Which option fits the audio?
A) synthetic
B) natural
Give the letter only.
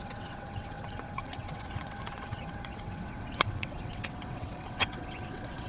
A